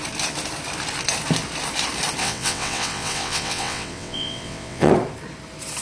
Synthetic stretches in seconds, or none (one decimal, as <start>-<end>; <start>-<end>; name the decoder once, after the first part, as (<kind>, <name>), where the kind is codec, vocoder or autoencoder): 2.2-4.9 (vocoder, WaveNeXt)